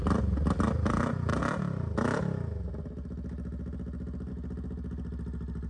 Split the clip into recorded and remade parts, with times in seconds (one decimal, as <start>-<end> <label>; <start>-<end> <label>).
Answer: 0.0-5.7 recorded